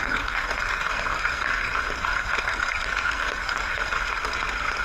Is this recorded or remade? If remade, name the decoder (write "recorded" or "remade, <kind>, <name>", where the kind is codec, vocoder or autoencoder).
remade, codec, SNAC